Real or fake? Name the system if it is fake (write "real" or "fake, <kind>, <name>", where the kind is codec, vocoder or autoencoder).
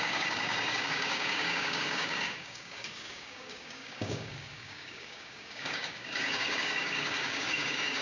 fake, codec, DAC